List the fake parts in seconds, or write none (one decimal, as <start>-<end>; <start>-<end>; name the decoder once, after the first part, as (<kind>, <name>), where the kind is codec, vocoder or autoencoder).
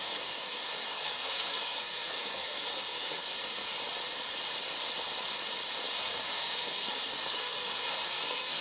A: 0.0-3.7 (codec, SNAC); 6.0-8.6